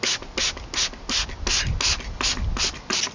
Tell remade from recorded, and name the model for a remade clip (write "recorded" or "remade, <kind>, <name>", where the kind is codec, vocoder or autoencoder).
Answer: recorded